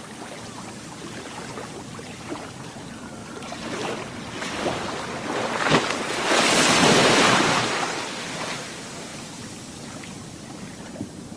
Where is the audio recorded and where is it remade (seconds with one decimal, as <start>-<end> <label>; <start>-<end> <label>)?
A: 0.0-3.2 recorded; 3.2-3.9 remade; 3.9-7.0 recorded; 7.0-8.0 remade; 8.0-9.1 recorded; 9.1-10.9 remade; 10.9-11.4 recorded